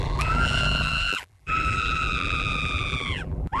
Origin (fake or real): fake